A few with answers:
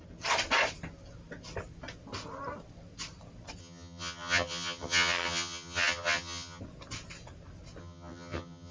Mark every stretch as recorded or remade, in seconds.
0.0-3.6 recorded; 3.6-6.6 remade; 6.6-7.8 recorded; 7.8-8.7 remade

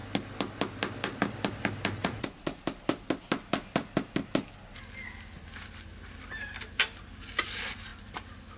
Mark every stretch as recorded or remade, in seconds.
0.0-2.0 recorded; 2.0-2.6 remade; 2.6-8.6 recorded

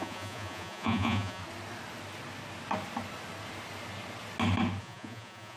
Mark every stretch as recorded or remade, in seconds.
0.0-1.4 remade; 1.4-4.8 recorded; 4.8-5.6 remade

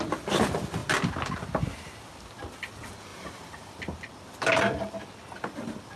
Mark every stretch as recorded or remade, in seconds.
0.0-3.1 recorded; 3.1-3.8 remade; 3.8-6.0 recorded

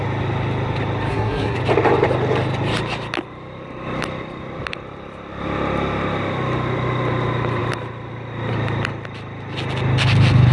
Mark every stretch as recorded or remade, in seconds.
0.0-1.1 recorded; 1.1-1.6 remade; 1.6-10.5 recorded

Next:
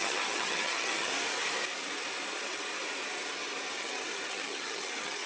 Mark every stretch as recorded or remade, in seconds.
0.0-1.1 remade; 1.1-3.8 recorded; 3.8-5.3 remade

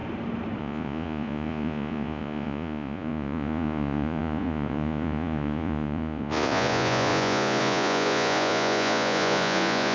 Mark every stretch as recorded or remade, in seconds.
0.0-0.6 recorded; 0.6-9.9 remade